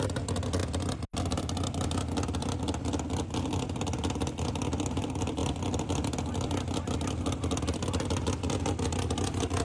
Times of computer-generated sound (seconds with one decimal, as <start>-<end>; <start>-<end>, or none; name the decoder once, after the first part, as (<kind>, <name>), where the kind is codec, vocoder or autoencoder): none